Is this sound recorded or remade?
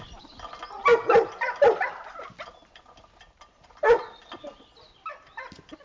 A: recorded